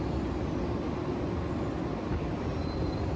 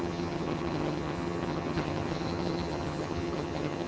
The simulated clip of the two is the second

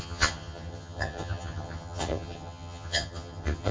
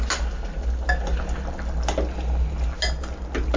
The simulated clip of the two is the first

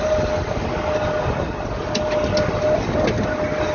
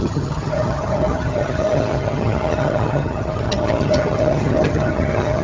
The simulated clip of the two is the second